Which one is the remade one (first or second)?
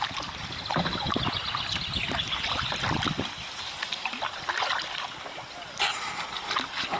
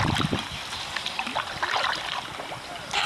first